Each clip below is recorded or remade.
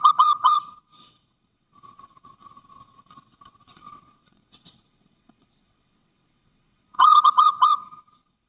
remade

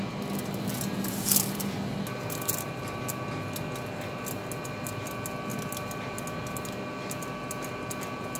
recorded